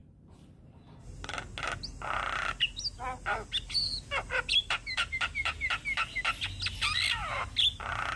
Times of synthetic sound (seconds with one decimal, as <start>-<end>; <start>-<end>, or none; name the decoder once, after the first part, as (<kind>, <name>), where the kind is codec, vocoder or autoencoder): 4.5-5.7 (vocoder, BigVGAN v2)